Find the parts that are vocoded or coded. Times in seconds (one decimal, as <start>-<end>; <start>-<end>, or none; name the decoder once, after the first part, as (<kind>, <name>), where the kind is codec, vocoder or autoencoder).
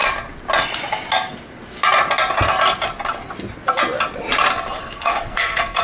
4.8-5.8 (codec, SNAC)